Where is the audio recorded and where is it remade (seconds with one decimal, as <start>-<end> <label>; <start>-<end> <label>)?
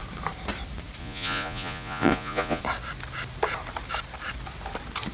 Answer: 0.0-1.0 recorded; 1.0-2.6 remade; 2.6-5.1 recorded